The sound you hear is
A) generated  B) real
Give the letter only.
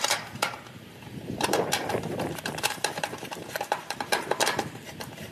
A